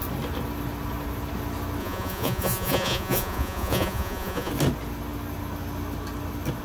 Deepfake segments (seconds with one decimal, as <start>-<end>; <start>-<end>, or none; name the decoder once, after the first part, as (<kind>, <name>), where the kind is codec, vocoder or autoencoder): 1.8-4.5 (vocoder, Vocos)